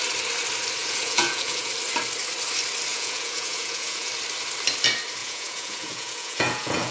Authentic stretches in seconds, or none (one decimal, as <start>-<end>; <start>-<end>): 0.0-0.8; 1.7-2.9; 4.1-5.2